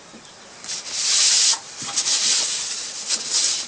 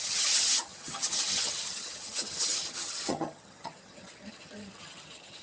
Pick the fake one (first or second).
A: second